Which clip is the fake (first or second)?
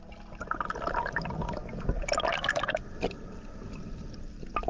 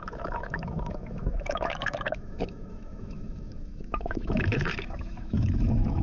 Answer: second